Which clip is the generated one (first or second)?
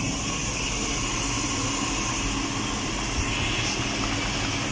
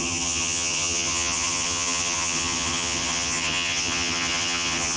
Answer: second